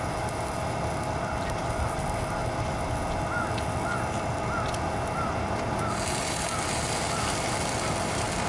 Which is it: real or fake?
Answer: real